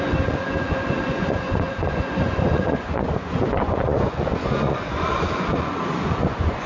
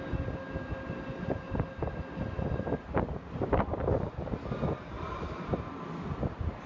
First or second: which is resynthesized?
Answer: first